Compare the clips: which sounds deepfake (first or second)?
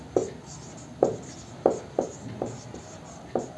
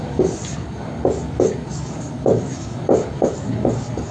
second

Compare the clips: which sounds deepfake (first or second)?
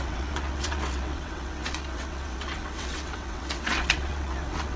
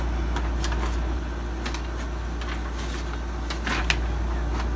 first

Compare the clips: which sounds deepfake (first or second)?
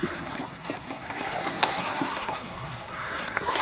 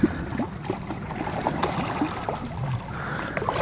first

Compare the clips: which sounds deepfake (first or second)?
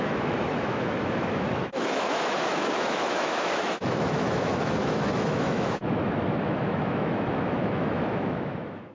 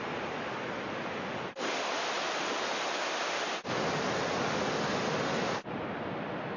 first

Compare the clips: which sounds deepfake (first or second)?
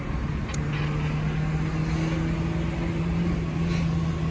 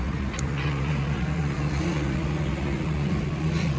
second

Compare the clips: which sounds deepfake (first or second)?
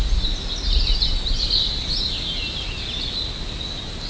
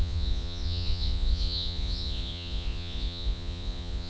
second